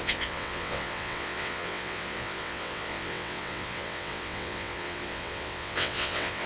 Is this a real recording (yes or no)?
no